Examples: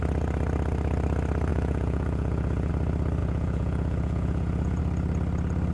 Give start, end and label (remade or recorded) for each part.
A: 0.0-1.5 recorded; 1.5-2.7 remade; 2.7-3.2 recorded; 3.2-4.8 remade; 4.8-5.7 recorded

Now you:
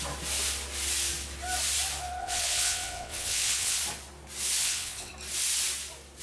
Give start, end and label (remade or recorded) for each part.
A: 0.0-2.2 recorded; 2.2-3.8 remade; 3.8-4.6 recorded; 4.6-5.1 remade; 5.1-6.2 recorded

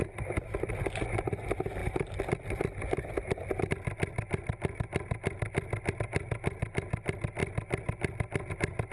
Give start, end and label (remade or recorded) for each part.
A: 0.0-8.9 recorded

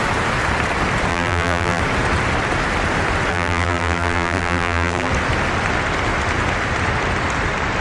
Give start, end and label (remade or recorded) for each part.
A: 0.0-1.1 recorded; 1.1-1.8 remade; 1.8-3.3 recorded; 3.3-5.1 remade; 5.1-7.8 recorded

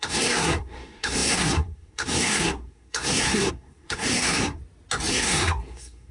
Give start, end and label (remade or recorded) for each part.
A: 0.0-4.6 remade; 4.6-5.1 recorded; 5.1-6.1 remade

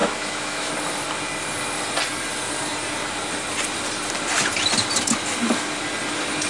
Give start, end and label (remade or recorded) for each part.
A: 0.0-0.7 remade; 0.7-6.5 recorded